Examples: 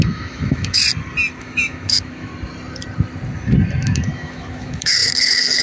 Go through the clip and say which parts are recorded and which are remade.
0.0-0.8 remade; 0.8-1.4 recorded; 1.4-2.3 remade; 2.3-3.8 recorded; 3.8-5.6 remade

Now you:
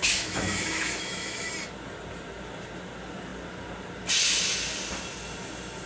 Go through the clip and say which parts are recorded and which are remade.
0.0-1.5 remade; 1.5-5.9 recorded

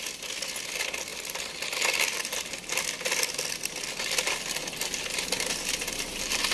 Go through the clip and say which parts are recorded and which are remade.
0.0-6.5 recorded